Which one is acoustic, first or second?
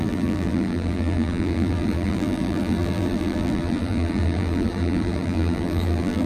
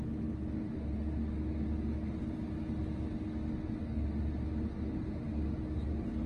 second